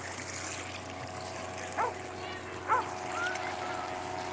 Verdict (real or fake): real